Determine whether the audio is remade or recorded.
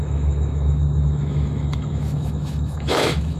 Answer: remade